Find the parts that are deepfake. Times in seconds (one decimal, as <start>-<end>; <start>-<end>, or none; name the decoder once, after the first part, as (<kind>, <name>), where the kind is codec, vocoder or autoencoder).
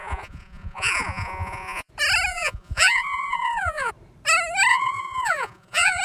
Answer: 0.0-1.9 (vocoder, Vocos); 2.3-3.9; 4.7-6.0